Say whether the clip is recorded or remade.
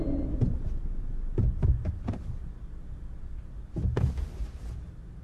recorded